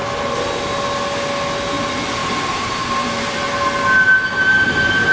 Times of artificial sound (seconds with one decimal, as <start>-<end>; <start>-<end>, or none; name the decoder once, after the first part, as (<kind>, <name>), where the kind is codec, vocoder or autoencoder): 2.2-3.5 (vocoder, BigVGAN v2)